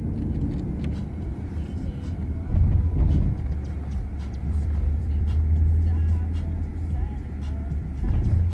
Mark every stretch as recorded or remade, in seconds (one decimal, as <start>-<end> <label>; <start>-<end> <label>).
0.0-1.3 recorded; 1.3-2.5 remade; 2.5-4.1 recorded; 4.1-5.6 remade; 5.6-6.7 recorded; 6.7-7.2 remade; 7.2-8.5 recorded